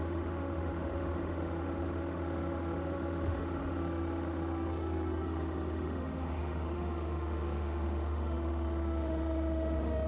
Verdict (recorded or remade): remade